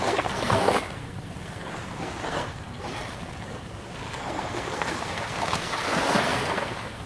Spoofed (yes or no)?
yes